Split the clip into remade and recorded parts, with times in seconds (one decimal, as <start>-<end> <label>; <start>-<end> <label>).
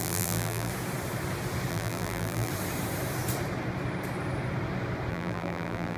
0.0-0.7 remade; 0.7-1.7 recorded; 1.7-2.5 remade; 2.5-5.1 recorded; 5.1-6.0 remade